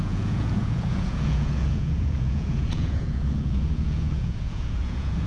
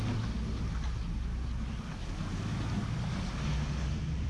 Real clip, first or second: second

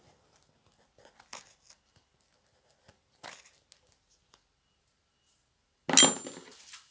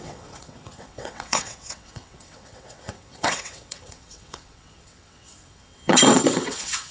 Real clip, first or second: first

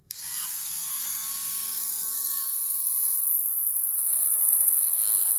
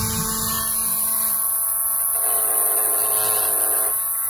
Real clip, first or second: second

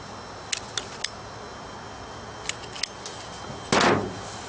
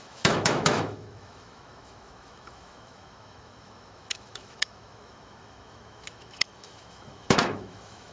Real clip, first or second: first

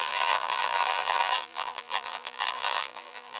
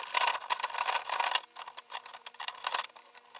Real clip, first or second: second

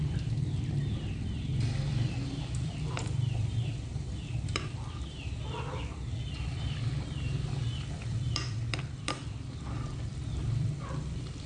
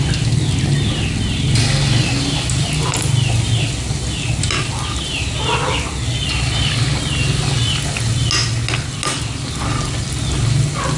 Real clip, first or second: second